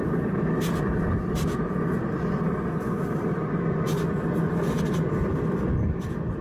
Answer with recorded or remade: recorded